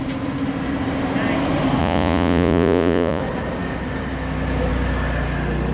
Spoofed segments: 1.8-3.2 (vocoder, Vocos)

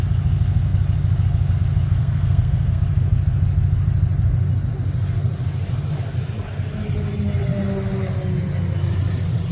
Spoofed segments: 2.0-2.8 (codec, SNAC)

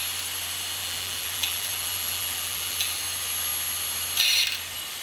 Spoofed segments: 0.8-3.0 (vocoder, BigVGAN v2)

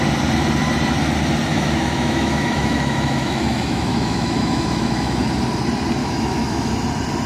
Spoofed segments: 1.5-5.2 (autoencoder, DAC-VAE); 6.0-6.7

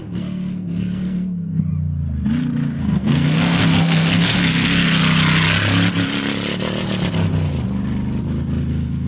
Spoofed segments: 0.0-1.7 (codec, SNAC); 2.8-5.0; 8.7-9.1

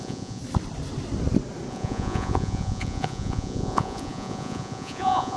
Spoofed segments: 0.0-0.4 (vocoder, Vocos); 1.7-5.4

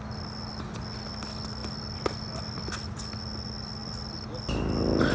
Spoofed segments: none

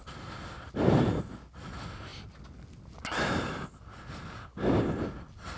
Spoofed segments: none